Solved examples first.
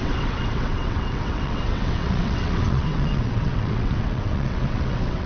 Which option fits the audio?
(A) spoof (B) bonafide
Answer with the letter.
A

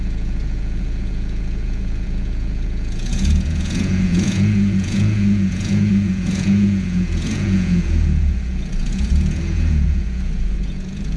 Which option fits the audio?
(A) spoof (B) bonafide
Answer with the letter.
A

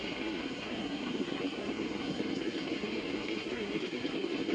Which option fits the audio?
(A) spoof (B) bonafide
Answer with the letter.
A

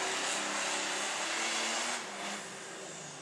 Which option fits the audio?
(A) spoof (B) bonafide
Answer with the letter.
B